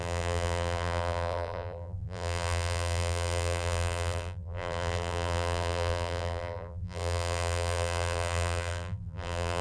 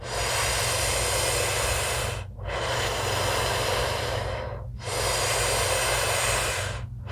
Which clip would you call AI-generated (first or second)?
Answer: first